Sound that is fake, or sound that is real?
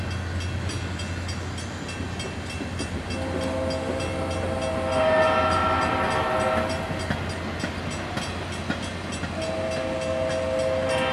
real